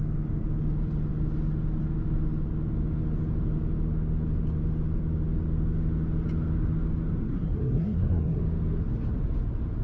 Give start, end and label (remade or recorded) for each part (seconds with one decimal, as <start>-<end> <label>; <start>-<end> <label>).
0.0-7.2 recorded; 7.2-8.4 remade; 8.4-9.8 recorded